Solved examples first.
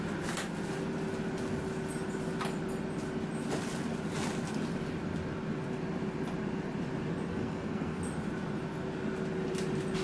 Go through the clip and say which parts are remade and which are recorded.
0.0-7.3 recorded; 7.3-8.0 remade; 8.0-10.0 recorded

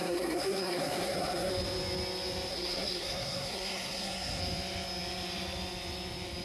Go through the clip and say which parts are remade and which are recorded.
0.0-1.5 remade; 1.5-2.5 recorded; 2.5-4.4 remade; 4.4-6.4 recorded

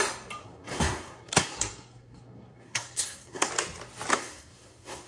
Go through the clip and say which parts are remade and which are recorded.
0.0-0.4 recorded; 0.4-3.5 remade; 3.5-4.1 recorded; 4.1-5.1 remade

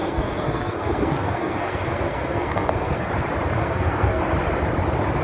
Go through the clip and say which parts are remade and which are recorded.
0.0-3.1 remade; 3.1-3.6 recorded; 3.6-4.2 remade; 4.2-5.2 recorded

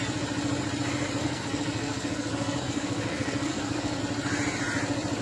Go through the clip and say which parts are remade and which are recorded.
0.0-1.2 recorded; 1.2-4.0 remade; 4.0-5.2 recorded